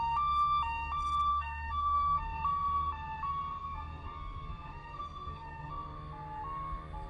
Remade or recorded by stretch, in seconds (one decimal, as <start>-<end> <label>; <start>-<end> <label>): 0.0-1.3 recorded; 1.3-2.2 remade; 2.2-3.6 recorded; 3.6-5.7 remade; 5.7-7.1 recorded